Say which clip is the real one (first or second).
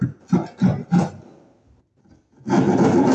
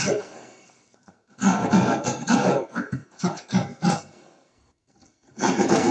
first